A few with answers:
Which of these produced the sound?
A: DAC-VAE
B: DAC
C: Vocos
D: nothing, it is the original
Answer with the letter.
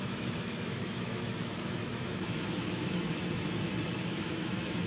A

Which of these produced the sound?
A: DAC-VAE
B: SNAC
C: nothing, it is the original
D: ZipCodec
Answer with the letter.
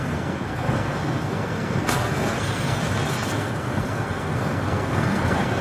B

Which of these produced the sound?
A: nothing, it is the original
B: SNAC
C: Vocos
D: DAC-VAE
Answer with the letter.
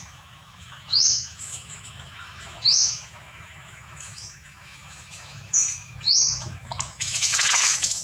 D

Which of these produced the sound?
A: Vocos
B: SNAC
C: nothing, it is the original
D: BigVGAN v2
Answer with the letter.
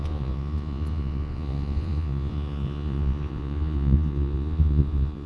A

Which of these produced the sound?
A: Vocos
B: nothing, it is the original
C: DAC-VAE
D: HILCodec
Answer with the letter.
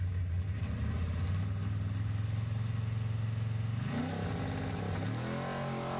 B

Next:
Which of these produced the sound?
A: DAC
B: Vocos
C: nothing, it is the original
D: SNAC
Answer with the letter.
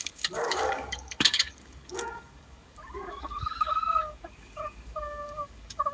A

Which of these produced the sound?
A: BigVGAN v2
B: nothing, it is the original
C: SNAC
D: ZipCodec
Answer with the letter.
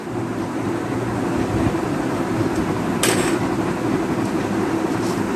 B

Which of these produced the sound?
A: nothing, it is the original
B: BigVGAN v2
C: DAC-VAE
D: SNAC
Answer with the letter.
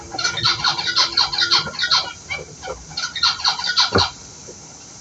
A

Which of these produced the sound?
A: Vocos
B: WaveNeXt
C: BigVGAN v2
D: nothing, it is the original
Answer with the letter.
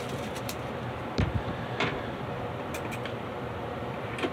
C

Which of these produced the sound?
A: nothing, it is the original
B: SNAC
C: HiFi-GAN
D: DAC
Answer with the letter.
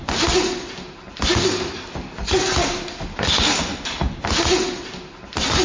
A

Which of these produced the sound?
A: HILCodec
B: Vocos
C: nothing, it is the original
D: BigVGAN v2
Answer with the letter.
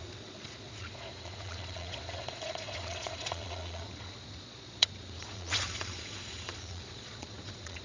B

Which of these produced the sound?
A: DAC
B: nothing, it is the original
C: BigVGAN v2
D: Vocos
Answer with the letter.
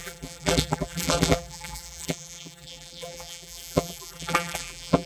C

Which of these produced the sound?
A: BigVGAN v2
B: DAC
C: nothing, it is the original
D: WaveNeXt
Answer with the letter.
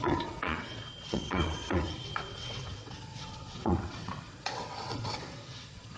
D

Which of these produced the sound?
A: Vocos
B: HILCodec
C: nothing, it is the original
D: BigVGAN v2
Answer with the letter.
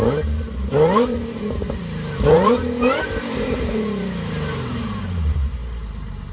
D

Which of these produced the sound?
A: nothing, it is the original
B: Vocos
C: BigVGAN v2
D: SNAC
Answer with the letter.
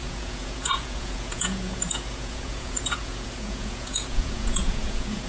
B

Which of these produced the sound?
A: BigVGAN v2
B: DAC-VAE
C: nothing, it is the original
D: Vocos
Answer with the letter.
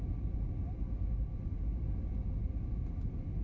C